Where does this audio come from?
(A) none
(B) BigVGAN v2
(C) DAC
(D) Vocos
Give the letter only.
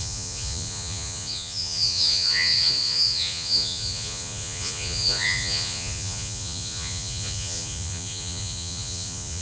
D